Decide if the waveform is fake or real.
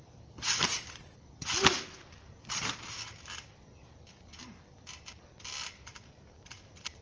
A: real